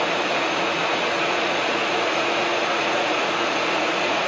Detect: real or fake fake